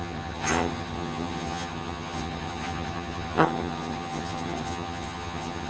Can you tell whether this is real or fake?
fake